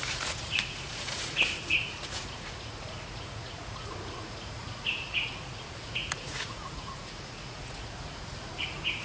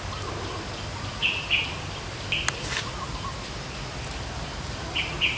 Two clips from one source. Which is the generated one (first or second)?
first